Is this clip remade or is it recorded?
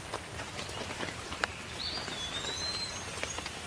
recorded